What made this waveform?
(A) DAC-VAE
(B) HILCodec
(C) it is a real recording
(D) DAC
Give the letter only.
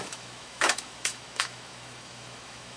A